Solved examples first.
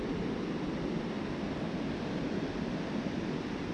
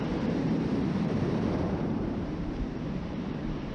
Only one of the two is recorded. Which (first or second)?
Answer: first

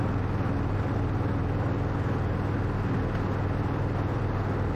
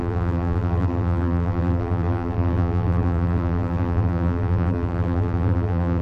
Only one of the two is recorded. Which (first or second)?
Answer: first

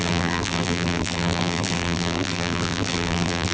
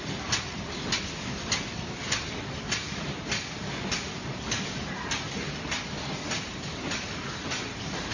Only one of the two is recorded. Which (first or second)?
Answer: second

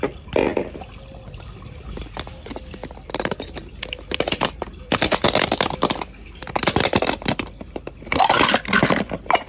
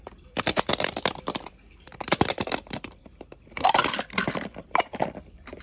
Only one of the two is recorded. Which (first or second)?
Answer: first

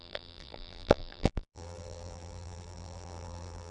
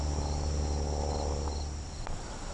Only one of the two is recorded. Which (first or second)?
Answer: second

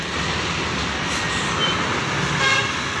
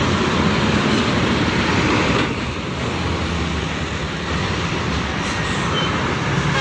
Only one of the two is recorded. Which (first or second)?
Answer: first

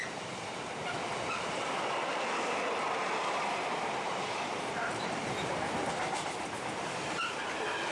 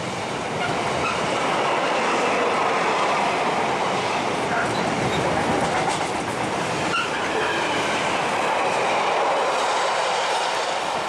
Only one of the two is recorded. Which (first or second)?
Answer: second